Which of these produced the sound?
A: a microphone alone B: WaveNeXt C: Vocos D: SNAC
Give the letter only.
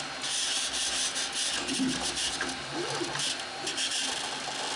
A